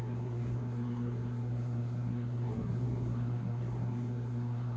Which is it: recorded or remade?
remade